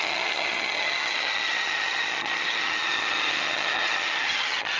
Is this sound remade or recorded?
remade